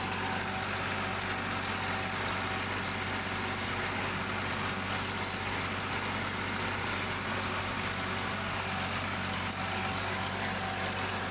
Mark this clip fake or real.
real